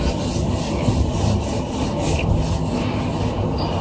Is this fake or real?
real